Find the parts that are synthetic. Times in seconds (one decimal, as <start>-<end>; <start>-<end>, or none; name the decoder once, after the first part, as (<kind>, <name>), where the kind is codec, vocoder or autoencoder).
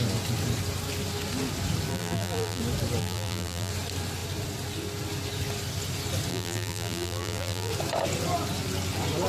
1.9-2.6 (vocoder, BigVGAN v2); 3.0-3.7; 6.3-7.7